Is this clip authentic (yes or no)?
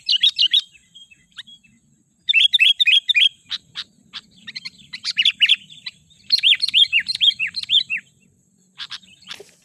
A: no